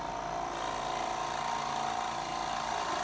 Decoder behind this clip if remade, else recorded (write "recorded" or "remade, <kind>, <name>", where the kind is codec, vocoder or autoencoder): recorded